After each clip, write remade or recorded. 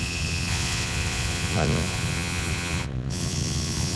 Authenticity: remade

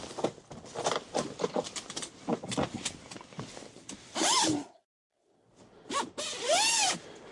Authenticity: recorded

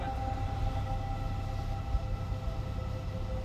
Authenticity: recorded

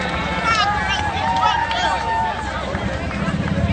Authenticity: recorded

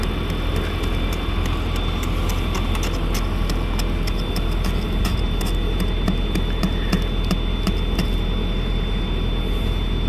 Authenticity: recorded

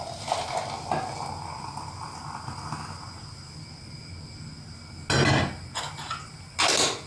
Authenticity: recorded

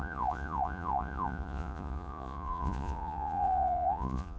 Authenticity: remade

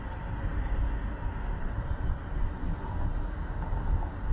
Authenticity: recorded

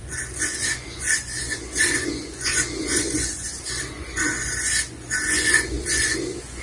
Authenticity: remade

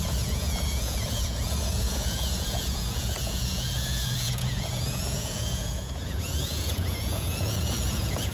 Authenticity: remade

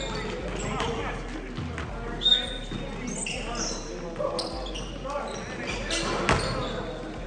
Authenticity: recorded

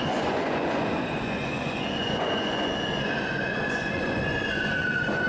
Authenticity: remade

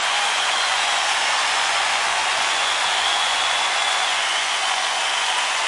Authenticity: remade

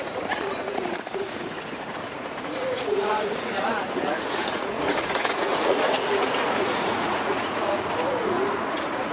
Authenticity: remade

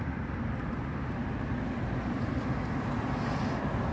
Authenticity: recorded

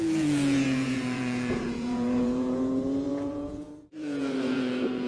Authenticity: remade